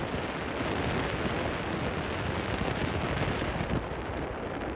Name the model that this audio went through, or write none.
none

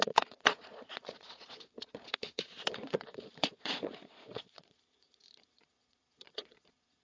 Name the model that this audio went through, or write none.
vocoder, Vocos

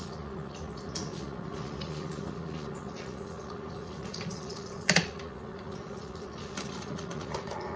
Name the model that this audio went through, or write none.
vocoder, Vocos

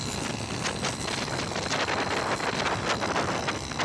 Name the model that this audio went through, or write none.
none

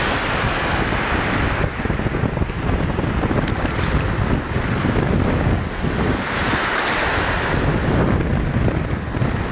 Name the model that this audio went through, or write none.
none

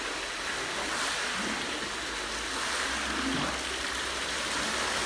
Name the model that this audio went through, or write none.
none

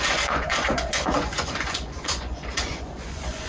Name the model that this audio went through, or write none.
vocoder, Vocos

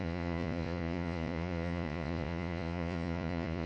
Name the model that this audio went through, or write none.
vocoder, Vocos